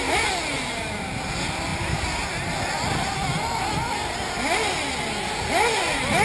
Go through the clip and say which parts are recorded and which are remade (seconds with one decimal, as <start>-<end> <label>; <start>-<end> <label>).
0.0-6.2 recorded